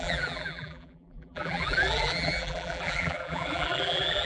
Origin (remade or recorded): remade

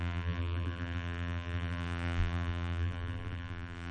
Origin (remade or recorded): remade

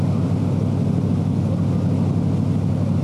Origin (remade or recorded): recorded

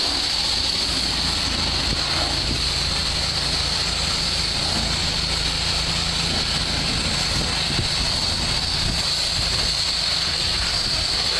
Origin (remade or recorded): recorded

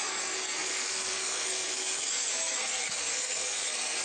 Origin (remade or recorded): remade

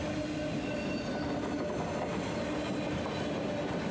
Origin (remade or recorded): recorded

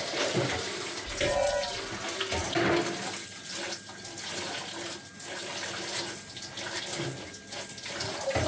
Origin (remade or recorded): recorded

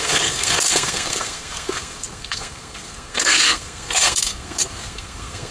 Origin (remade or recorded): remade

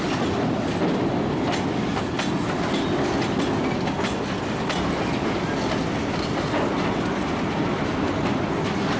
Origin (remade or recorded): recorded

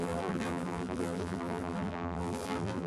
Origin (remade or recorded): remade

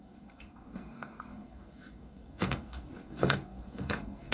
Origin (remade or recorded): remade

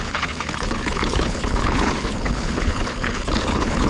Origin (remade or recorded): remade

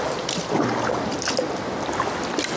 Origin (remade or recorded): recorded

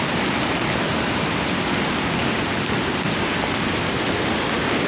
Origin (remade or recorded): recorded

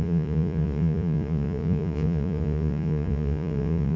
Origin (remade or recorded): remade